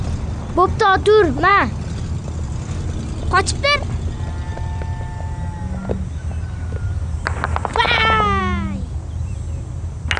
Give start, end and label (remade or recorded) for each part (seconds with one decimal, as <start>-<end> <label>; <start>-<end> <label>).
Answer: 0.0-10.2 recorded